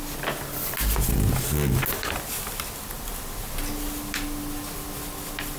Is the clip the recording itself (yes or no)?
yes